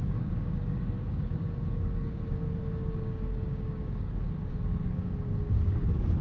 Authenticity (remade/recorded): remade